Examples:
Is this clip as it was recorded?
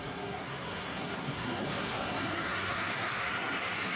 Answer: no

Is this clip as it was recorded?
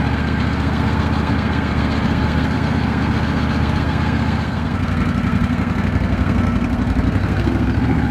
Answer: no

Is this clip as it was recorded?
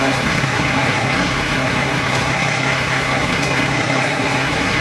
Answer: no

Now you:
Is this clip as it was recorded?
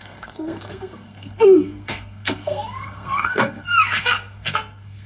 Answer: no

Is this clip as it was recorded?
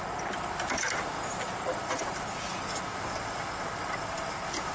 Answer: yes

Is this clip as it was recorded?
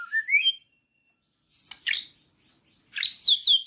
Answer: yes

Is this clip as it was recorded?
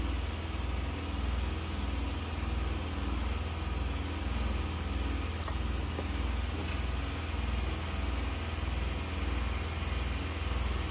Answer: yes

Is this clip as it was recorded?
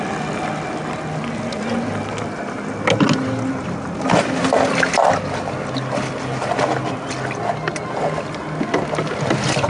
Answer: yes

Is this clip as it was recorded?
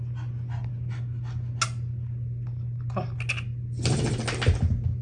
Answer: yes